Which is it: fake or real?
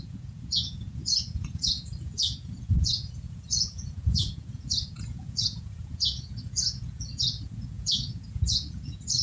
fake